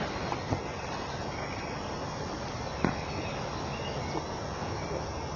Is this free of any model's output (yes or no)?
yes